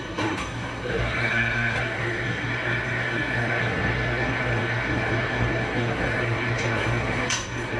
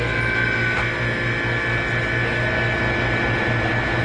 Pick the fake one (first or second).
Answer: first